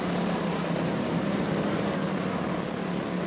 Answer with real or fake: real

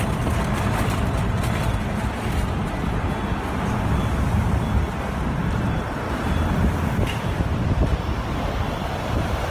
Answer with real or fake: real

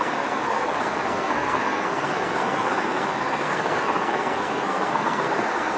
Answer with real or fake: fake